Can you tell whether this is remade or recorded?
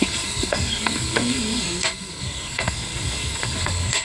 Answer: remade